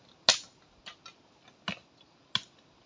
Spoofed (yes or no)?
no